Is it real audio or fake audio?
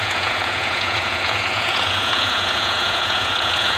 fake